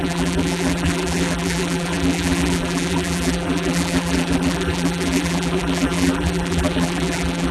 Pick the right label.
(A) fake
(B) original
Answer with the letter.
A